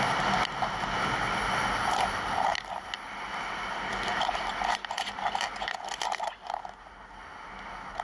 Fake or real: real